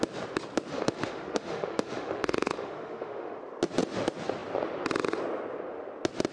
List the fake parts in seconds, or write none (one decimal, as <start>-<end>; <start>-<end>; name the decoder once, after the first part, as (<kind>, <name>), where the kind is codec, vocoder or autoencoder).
0.7-3.4 (autoencoder, DAC-VAE)